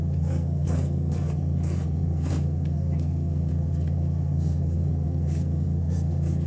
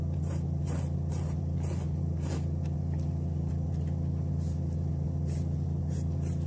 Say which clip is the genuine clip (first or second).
second